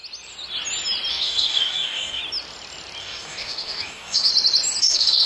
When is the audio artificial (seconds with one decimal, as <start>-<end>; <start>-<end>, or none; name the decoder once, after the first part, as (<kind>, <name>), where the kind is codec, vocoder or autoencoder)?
1.1-2.2 (codec, DAC); 3.0-4.3; 4.8-5.3